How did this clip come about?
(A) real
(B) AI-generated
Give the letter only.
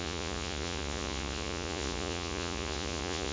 B